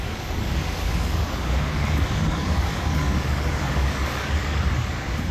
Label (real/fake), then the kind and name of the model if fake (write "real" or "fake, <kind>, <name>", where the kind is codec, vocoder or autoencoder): fake, codec, DAC